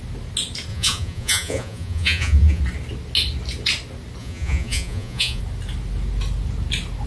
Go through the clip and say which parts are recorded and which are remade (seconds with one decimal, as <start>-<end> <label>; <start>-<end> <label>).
0.0-0.7 recorded; 0.7-2.6 remade; 2.6-4.2 recorded; 4.2-5.4 remade; 5.4-7.1 recorded